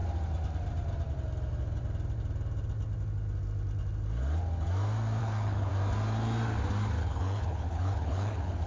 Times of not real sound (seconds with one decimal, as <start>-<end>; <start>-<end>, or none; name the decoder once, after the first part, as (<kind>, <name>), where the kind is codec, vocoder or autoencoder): 5.2-5.7 (codec, HILCodec); 7.0-8.7